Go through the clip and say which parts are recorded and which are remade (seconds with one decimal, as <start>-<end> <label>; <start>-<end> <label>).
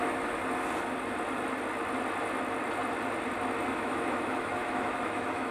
0.0-0.4 remade; 0.4-3.7 recorded; 3.7-5.5 remade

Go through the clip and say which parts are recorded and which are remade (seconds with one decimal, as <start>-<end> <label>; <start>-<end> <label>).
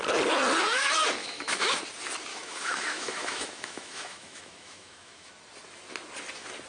0.0-1.2 recorded; 1.2-1.8 remade; 1.8-2.3 recorded; 2.3-5.3 remade; 5.3-6.7 recorded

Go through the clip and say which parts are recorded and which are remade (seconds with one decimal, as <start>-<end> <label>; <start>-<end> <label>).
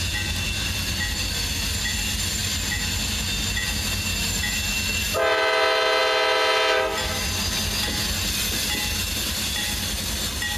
0.0-10.6 recorded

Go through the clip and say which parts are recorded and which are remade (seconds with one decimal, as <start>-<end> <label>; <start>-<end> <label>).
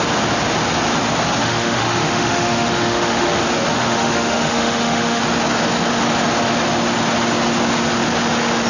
0.0-1.4 recorded; 1.4-3.4 remade; 3.4-3.8 recorded; 3.8-5.2 remade; 5.2-8.7 recorded